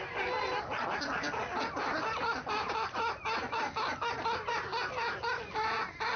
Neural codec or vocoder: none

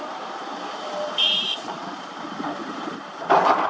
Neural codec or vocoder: vocoder, BigVGAN v2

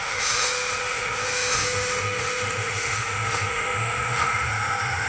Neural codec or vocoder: autoencoder, DAC-VAE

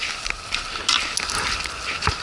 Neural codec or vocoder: none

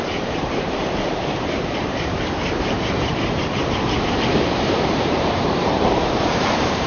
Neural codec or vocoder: vocoder, BigVGAN v2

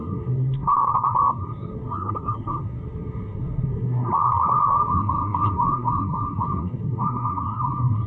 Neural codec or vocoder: codec, SNAC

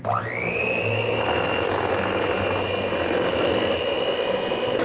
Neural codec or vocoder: none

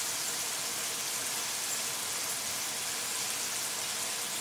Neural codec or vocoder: none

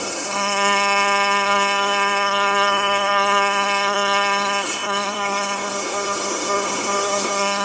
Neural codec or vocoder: codec, SNAC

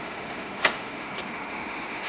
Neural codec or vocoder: autoencoder, DAC-VAE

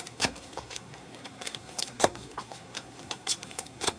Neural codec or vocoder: codec, SNAC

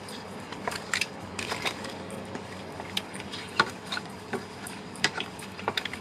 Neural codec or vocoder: codec, DAC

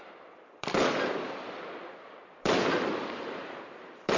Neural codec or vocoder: vocoder, BigVGAN v2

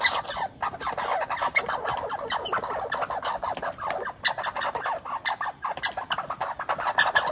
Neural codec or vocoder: none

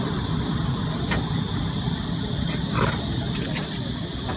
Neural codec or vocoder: none